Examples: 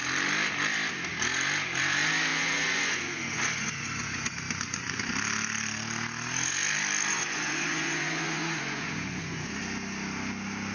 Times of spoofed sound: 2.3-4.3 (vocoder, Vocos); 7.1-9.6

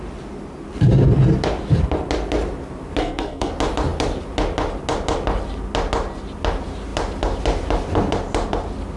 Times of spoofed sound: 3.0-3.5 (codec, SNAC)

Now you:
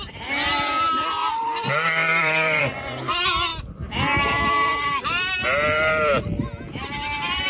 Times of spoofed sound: 1.2-2.6 (vocoder, BigVGAN v2)

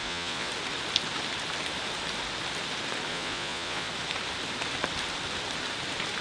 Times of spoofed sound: 0.0-0.5 (vocoder, Vocos); 3.1-3.9